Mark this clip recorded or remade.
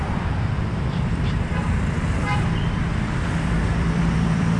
remade